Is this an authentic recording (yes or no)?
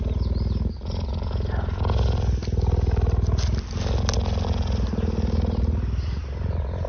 yes